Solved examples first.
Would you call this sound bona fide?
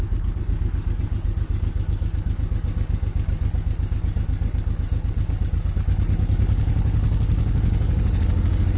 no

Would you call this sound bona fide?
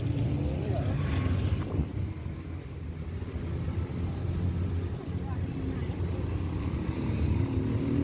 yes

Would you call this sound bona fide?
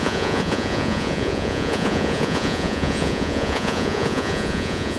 no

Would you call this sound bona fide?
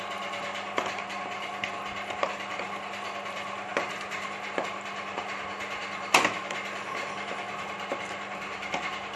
no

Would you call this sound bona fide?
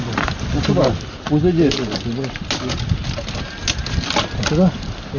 yes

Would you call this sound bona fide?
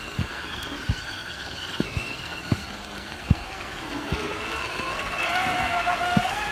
no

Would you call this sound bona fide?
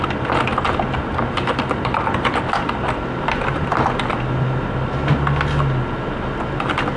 yes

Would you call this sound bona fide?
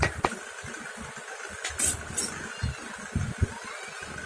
yes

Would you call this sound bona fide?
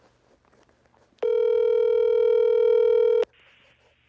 yes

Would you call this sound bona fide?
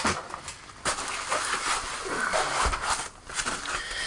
yes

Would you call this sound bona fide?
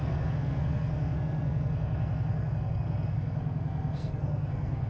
no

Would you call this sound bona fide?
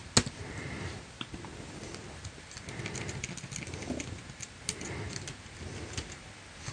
yes